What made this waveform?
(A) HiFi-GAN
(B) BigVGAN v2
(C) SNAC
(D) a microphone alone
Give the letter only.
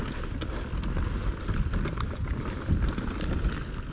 D